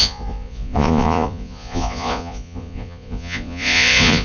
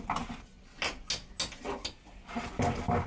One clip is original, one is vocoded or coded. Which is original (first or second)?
second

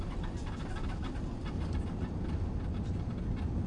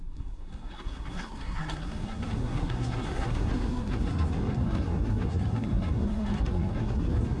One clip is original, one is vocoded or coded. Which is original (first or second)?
first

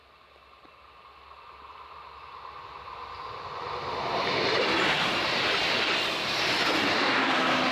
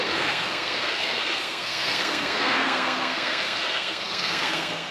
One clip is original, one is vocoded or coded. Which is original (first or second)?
first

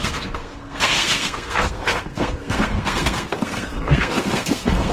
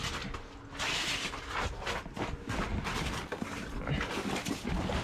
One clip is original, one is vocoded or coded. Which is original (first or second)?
second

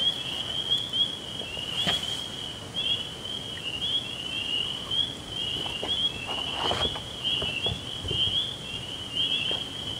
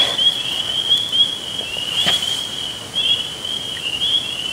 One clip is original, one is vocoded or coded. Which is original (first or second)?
first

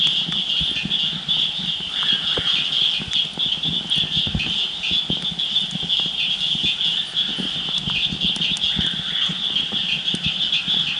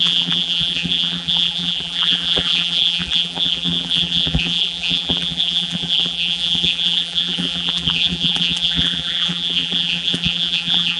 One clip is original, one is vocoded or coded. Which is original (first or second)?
first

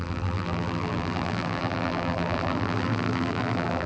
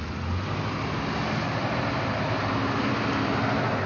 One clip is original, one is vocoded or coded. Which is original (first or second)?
second